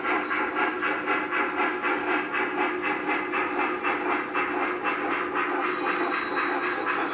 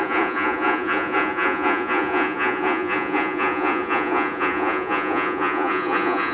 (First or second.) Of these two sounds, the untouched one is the first